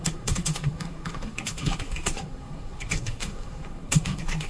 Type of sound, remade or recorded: remade